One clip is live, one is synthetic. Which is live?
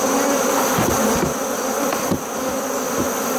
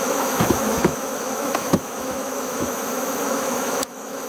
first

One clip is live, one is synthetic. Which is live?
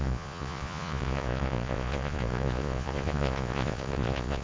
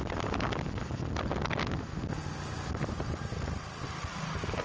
second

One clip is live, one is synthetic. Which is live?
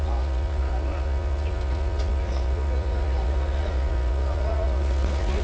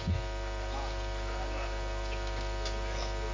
second